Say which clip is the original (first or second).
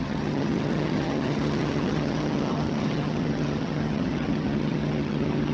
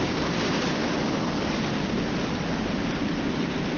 second